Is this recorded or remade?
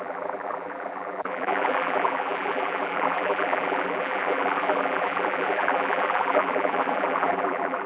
remade